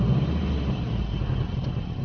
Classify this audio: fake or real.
real